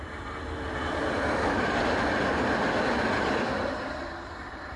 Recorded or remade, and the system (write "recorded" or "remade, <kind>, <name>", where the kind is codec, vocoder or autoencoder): recorded